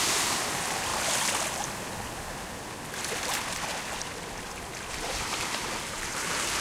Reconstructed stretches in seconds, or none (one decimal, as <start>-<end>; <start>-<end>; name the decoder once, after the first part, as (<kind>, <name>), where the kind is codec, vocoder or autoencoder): 0.0-0.9 (vocoder, BigVGAN v2); 4.9-6.6